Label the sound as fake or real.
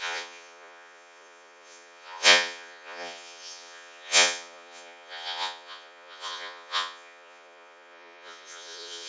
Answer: fake